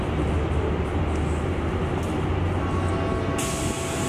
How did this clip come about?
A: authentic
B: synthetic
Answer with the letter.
A